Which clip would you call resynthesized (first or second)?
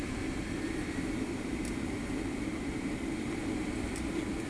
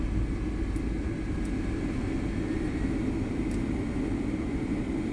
first